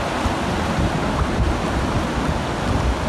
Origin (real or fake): real